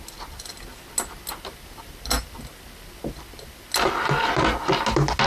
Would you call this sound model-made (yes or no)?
no